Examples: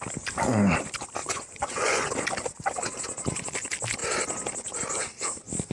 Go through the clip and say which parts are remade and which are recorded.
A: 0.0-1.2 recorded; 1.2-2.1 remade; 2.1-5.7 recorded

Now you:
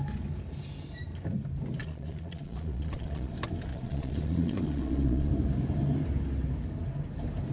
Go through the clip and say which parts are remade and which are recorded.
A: 0.0-1.8 recorded; 1.8-3.3 remade; 3.3-3.7 recorded; 3.7-5.3 remade; 5.3-7.5 recorded

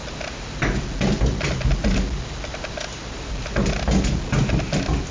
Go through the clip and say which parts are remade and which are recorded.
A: 0.0-5.1 recorded

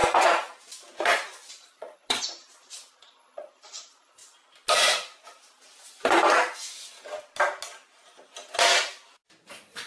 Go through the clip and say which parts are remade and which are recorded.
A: 0.0-1.5 recorded; 1.5-4.2 remade; 4.2-9.5 recorded; 9.5-9.9 remade

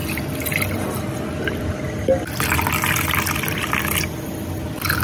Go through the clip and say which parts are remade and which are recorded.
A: 0.0-5.0 recorded

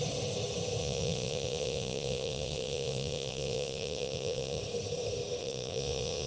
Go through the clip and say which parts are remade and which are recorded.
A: 0.0-0.8 recorded; 0.8-4.6 remade; 4.6-5.4 recorded; 5.4-6.3 remade

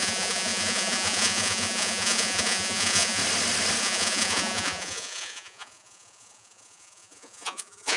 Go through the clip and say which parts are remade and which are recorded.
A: 0.0-3.2 remade; 3.2-3.8 recorded; 3.8-8.0 remade

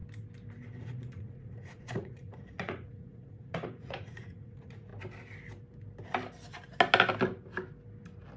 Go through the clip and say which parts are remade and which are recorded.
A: 0.0-0.8 recorded; 0.8-4.9 remade; 4.9-8.4 recorded